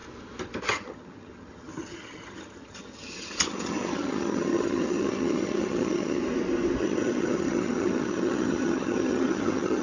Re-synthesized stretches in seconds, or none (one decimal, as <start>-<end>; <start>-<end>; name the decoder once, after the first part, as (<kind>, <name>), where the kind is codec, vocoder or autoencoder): 0.6-6.2 (vocoder, HiFi-GAN); 6.8-9.8